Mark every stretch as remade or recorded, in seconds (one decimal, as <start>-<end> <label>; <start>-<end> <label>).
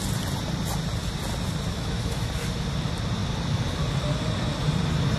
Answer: 0.0-1.7 recorded; 1.7-2.3 remade; 2.3-5.2 recorded